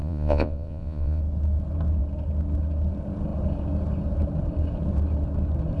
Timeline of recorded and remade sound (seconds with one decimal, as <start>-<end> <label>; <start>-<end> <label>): 0.0-1.2 remade; 1.2-5.8 recorded